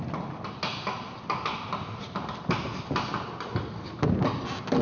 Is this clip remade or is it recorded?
recorded